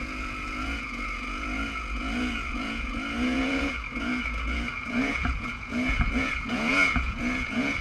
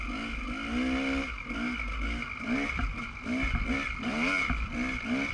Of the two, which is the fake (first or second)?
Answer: first